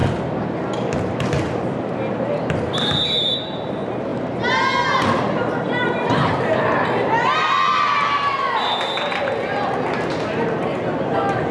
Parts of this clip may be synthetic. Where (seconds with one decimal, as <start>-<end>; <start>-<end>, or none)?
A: 0.0-3.4